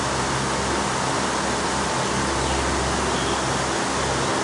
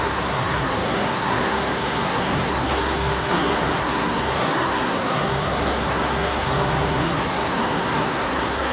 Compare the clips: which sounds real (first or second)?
first